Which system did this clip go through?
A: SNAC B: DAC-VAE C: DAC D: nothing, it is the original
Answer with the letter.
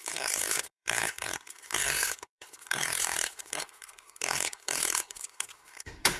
A